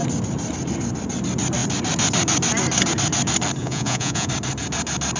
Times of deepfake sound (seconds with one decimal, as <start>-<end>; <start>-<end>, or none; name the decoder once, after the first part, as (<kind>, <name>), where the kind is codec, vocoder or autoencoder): 3.6-4.3 (vocoder, Vocos)